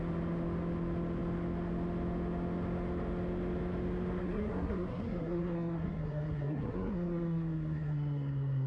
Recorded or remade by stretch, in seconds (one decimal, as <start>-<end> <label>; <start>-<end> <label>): 0.0-4.2 recorded; 4.2-8.7 remade